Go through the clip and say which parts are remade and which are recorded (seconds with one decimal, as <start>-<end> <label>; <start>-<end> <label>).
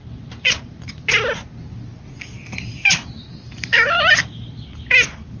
0.0-0.9 remade; 0.9-2.7 recorded; 2.7-4.5 remade; 4.5-5.4 recorded